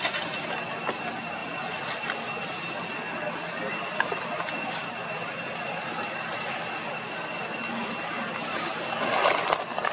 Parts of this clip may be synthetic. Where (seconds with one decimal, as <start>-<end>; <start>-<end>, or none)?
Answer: none